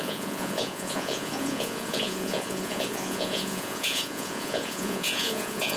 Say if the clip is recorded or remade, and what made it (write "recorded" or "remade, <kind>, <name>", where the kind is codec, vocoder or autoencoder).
remade, vocoder, Vocos